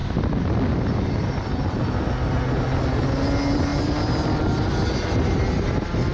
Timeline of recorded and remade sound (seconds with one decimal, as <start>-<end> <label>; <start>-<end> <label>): 0.0-6.1 recorded